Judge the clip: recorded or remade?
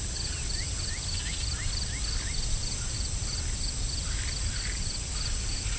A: recorded